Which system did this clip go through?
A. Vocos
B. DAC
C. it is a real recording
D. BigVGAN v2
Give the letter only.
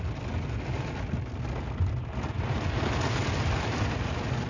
C